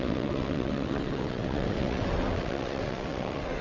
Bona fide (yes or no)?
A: no